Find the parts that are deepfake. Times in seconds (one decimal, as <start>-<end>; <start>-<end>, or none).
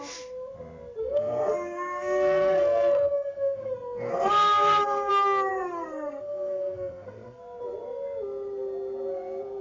1.0-5.1; 5.5-7.4